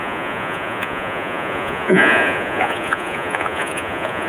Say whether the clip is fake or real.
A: fake